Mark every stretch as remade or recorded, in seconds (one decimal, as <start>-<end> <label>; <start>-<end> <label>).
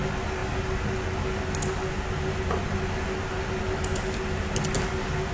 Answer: 0.0-5.3 recorded